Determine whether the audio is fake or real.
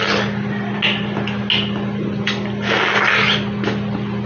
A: real